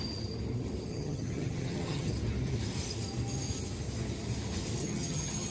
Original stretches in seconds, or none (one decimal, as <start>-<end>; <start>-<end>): 0.0-0.9; 2.1-4.8